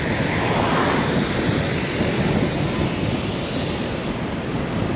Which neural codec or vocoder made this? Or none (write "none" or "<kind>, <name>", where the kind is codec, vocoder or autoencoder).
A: none